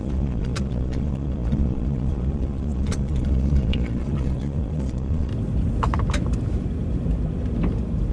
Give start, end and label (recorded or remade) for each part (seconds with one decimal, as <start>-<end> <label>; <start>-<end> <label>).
0.0-5.3 remade; 5.3-8.1 recorded